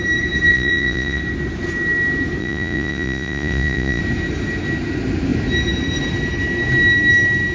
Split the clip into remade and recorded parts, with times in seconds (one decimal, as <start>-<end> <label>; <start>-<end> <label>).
0.0-0.5 recorded; 0.5-1.2 remade; 1.2-2.4 recorded; 2.4-4.0 remade; 4.0-7.5 recorded